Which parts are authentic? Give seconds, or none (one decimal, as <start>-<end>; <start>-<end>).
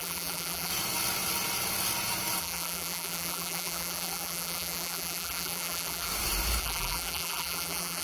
0.7-2.4; 6.1-6.6